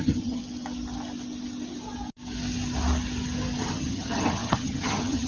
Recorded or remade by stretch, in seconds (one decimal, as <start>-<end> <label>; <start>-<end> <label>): 0.0-0.4 remade; 0.4-3.6 recorded; 3.6-5.3 remade